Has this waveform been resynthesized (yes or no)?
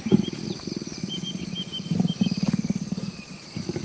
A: no